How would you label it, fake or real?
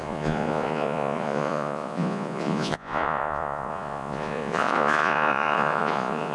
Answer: fake